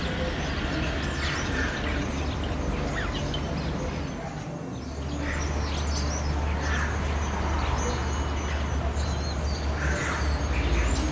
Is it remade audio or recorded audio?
recorded